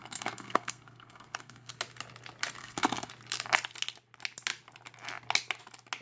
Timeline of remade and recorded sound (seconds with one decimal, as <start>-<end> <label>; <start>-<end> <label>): 0.0-1.7 remade; 1.7-2.6 recorded; 2.6-3.1 remade; 3.1-6.0 recorded